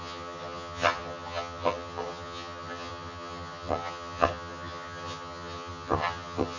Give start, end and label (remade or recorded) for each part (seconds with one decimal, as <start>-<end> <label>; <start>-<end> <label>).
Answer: 0.0-6.6 remade